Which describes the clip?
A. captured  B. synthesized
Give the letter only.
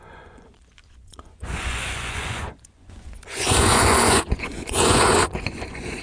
B